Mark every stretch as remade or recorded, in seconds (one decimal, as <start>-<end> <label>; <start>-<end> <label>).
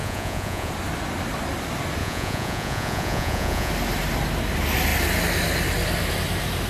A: 0.0-0.7 remade; 0.7-2.0 recorded; 2.0-3.7 remade; 3.7-6.7 recorded